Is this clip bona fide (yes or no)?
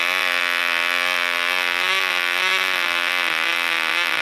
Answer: yes